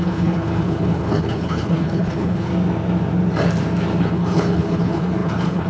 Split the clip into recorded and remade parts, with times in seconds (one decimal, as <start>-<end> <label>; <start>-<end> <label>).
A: 0.0-2.5 remade; 2.5-4.0 recorded; 4.0-5.7 remade